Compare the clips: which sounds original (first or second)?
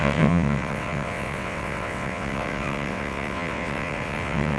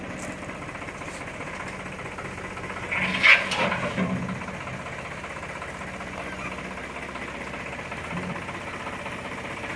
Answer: second